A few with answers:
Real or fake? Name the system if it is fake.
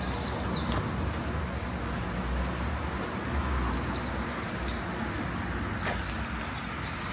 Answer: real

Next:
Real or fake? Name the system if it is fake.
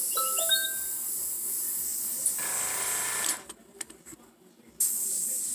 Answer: real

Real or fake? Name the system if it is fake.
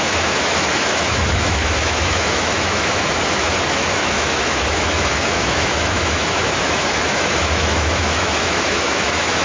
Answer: fake, autoencoder, DAC-VAE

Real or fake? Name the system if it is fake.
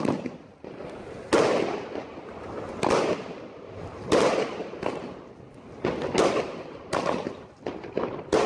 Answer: real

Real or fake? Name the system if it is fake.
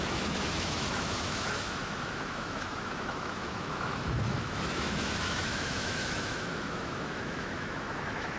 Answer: fake, autoencoder, DAC-VAE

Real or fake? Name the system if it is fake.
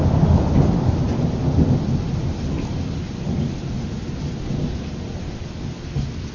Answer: real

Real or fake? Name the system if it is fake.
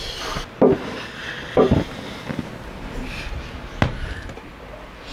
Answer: real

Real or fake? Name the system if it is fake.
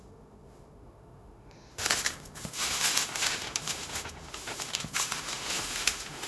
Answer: fake, autoencoder, DAC-VAE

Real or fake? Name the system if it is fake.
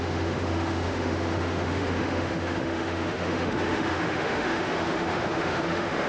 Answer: fake, autoencoder, DAC-VAE